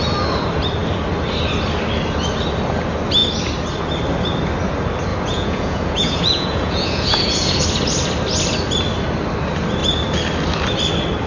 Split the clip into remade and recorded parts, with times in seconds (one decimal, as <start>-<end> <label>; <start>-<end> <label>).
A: 0.0-5.1 recorded; 5.1-7.6 remade; 7.6-11.3 recorded